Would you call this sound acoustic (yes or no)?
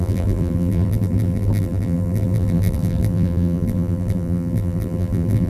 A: no